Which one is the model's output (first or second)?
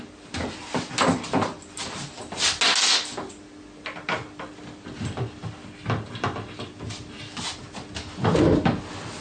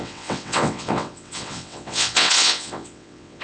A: second